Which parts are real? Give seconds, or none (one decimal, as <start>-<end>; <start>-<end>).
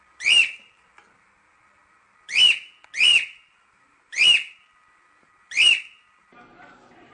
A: 0.0-7.1